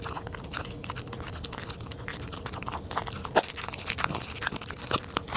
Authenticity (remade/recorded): recorded